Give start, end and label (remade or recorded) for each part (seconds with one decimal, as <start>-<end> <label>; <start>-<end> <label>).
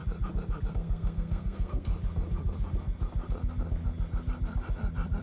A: 0.0-0.7 recorded; 0.7-1.9 remade; 1.9-5.2 recorded